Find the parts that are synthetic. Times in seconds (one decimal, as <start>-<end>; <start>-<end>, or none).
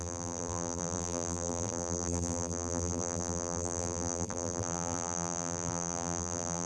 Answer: 0.0-6.7